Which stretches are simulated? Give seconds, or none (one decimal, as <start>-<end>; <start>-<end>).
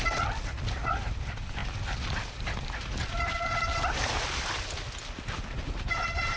none